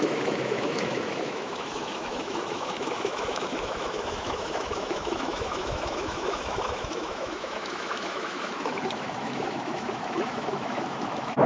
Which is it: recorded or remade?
remade